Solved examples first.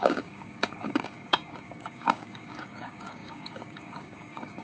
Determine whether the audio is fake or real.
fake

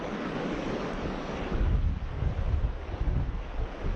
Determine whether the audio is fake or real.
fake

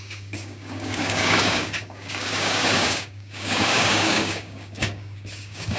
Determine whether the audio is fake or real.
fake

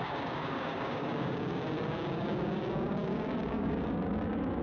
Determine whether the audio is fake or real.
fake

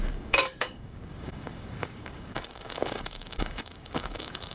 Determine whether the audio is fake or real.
fake